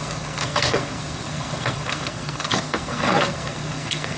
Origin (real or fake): fake